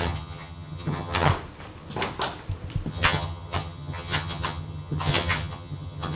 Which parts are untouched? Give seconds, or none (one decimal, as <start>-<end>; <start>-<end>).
1.3-2.9